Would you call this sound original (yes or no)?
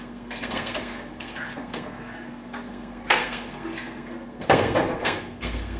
no